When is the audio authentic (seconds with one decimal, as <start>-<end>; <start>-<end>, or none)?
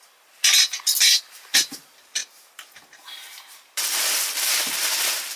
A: 0.0-5.4